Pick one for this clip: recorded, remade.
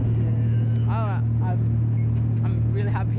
recorded